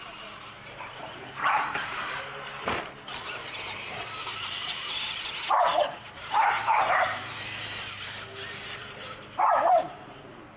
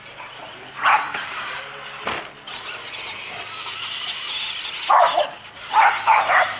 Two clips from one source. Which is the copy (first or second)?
first